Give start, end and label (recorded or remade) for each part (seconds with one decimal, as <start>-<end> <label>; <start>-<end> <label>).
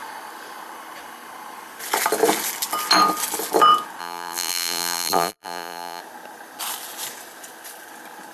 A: 0.0-4.0 recorded; 4.0-6.0 remade; 6.0-8.3 recorded